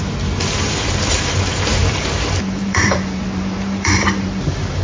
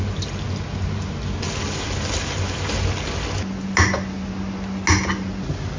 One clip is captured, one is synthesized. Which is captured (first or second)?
second